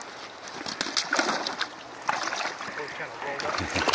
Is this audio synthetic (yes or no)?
no